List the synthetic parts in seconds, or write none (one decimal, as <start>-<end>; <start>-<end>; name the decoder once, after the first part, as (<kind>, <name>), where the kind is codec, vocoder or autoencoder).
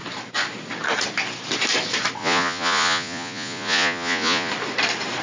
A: 2.2-4.5 (vocoder, Vocos)